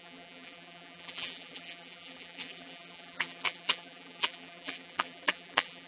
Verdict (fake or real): fake